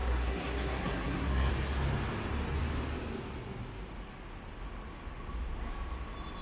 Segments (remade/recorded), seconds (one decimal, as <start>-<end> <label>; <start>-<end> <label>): 0.0-1.5 remade; 1.5-6.4 recorded